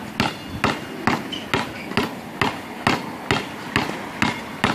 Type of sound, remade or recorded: recorded